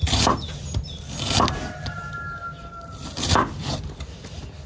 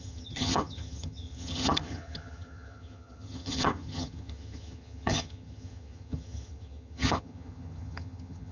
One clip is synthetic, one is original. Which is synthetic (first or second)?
second